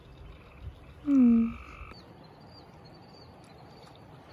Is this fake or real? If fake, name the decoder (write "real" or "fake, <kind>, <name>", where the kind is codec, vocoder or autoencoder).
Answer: real